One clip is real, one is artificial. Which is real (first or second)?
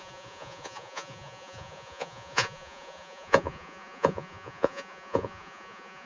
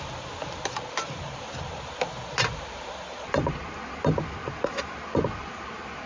second